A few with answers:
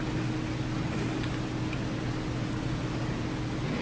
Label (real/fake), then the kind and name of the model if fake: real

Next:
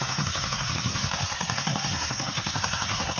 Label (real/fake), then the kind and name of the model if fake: fake, codec, SNAC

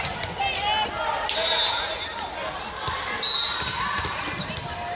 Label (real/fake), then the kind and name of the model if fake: real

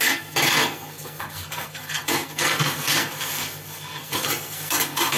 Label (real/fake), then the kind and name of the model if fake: fake, codec, SNAC